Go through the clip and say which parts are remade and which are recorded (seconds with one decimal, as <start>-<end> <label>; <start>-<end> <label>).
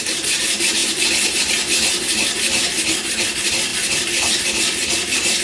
0.0-5.4 recorded